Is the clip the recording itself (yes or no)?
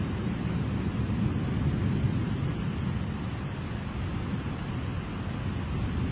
yes